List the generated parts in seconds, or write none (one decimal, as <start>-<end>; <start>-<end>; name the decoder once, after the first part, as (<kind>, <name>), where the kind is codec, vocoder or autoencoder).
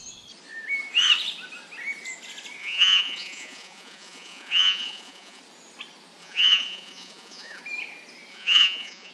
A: 2.6-5.4 (vocoder, Vocos); 6.2-7.6; 8.3-9.1